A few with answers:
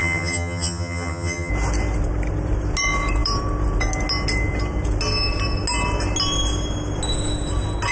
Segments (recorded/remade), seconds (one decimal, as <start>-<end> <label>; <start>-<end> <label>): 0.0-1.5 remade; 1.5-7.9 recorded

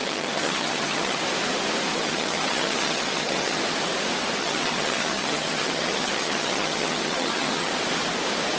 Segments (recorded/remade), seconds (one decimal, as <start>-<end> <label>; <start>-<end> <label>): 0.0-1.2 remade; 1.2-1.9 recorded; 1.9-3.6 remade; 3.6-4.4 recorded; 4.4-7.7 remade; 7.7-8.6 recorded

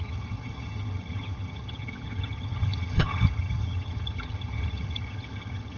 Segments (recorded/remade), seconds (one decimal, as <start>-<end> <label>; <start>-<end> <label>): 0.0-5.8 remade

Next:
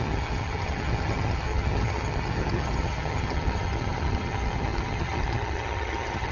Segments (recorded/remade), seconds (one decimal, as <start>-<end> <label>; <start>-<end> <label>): 0.0-6.3 remade

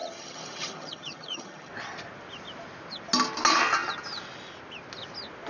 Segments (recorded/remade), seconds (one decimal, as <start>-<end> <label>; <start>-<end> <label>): 0.0-1.7 remade; 1.7-5.5 recorded

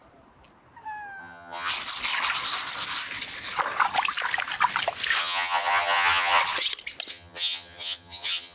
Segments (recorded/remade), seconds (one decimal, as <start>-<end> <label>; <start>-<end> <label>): 0.0-1.2 recorded; 1.2-1.7 remade; 1.7-5.2 recorded; 5.2-6.4 remade; 6.4-7.1 recorded; 7.1-8.5 remade

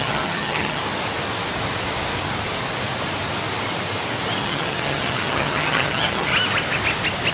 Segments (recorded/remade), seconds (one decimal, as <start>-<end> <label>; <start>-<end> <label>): 0.0-0.8 remade; 0.8-4.4 recorded; 4.4-6.3 remade; 6.3-7.3 recorded

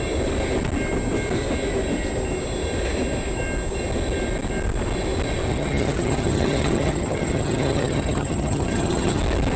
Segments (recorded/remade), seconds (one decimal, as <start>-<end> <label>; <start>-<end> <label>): 0.0-5.5 recorded; 5.5-9.2 remade; 9.2-9.6 recorded